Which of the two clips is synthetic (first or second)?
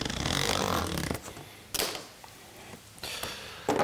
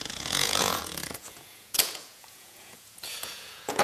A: second